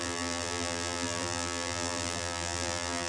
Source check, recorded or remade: remade